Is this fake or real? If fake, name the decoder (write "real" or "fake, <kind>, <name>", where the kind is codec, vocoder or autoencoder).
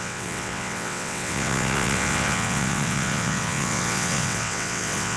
fake, vocoder, WaveNeXt